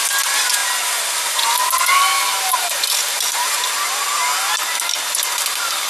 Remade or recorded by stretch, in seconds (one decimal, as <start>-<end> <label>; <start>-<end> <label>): 0.0-5.9 recorded